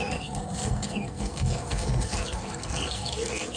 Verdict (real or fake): fake